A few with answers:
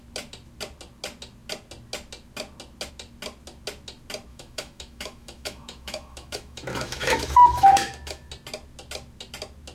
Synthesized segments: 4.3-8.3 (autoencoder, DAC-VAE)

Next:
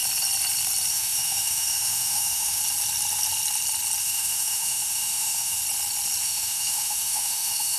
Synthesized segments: 0.9-2.6 (autoencoder, DAC-VAE); 4.0-5.6; 6.2-7.8

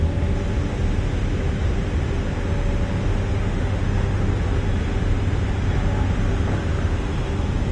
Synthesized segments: 3.1-4.3 (autoencoder, DAC-VAE)

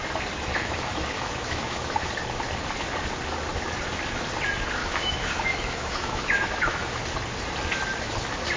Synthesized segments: 0.5-2.1 (autoencoder, DAC-VAE); 4.8-6.9

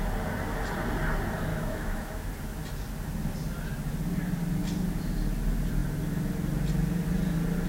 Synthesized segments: 1.5-2.3 (autoencoder, DAC-VAE)